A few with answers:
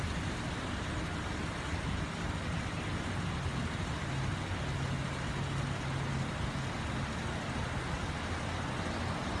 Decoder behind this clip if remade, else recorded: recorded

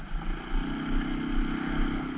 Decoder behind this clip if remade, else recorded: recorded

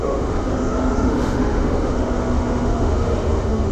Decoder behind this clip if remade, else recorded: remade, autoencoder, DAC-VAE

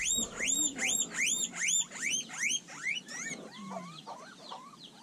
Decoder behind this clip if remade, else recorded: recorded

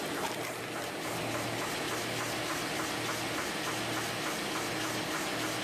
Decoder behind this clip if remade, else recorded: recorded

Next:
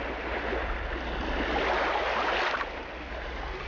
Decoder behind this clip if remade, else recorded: recorded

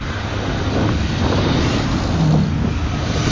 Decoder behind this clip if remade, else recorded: recorded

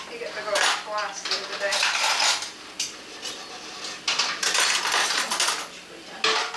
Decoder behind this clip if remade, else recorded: recorded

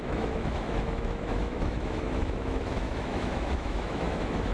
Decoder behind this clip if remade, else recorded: remade, autoencoder, DAC-VAE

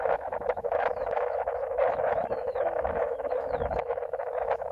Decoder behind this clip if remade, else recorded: remade, autoencoder, DAC-VAE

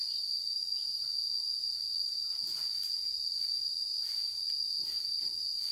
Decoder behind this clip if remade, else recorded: recorded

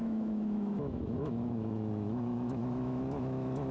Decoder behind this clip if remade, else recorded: remade, autoencoder, DAC-VAE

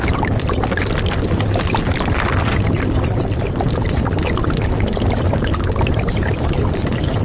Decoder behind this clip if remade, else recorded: recorded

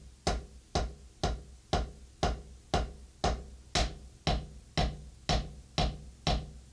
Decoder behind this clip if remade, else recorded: recorded